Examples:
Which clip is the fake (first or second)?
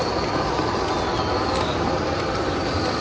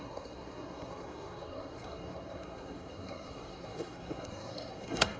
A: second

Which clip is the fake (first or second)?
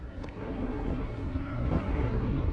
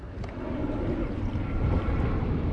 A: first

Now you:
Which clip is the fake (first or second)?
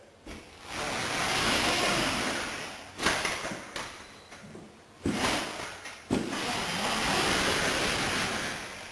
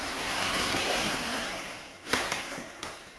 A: second